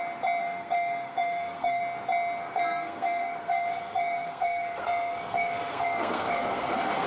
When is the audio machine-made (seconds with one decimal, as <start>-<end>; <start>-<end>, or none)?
0.4-1.8; 2.4-7.1